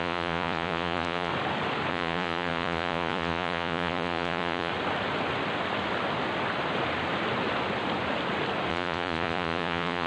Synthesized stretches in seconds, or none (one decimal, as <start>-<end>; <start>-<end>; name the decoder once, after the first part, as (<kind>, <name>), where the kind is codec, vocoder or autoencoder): 0.0-1.3 (vocoder, Vocos); 1.9-4.7; 8.7-10.1